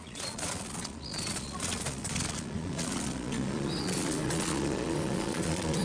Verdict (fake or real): fake